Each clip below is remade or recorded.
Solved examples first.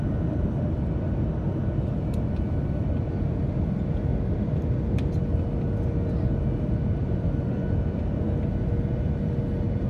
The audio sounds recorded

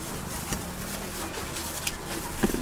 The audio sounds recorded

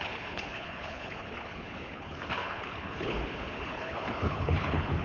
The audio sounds remade